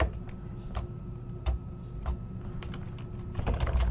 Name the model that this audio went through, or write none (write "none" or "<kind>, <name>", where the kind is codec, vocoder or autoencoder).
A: vocoder, BigVGAN v2